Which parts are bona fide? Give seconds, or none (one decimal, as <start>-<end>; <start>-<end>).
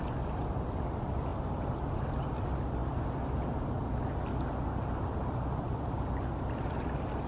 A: 0.0-7.3